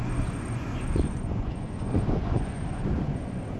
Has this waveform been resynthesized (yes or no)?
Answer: yes